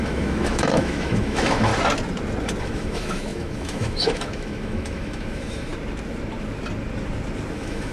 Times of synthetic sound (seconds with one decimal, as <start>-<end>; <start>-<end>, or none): 0.0-1.7; 2.6-5.7; 7.5-7.9